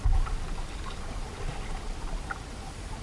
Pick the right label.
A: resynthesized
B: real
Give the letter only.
B